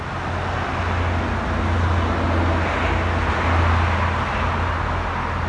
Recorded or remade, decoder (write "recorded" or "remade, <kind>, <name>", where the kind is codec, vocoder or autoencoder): recorded